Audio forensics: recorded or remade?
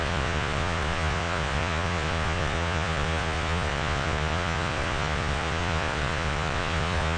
remade